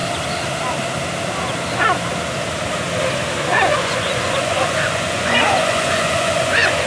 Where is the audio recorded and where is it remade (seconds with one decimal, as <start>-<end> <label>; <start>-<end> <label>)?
0.0-3.5 recorded; 3.5-6.9 remade